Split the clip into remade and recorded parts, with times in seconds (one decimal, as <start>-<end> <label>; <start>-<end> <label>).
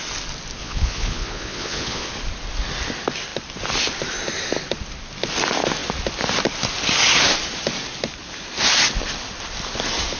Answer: 0.0-0.6 recorded; 0.6-2.1 remade; 2.1-10.2 recorded